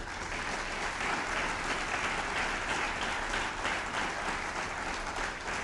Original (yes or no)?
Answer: yes